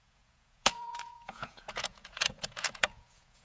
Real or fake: fake